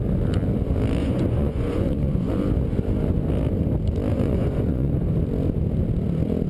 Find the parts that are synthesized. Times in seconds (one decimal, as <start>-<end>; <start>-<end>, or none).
1.0-2.3; 4.1-4.9